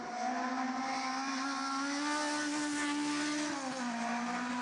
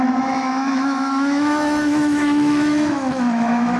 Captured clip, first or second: first